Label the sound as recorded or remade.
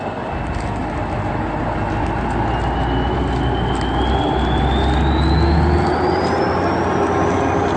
recorded